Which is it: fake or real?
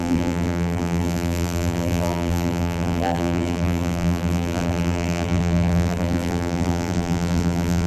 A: fake